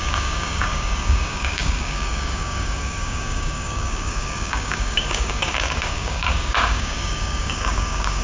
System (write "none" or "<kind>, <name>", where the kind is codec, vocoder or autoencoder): codec, DAC